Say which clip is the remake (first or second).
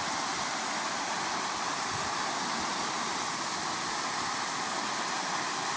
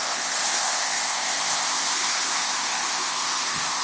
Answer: second